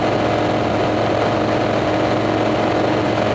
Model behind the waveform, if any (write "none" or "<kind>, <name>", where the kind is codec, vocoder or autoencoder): none